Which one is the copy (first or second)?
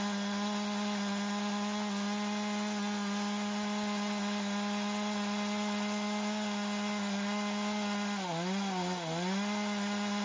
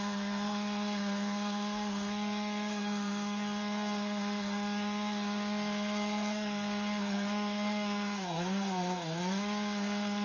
second